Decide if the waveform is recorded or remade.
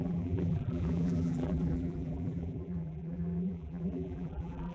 remade